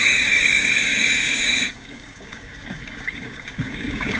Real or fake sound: fake